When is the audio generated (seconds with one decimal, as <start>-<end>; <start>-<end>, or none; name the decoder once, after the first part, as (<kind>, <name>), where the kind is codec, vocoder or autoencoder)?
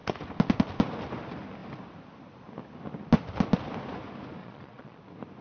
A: 4.4-5.0 (vocoder, Vocos)